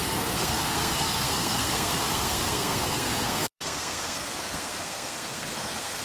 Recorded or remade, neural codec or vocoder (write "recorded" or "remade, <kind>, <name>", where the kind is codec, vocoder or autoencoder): remade, codec, SNAC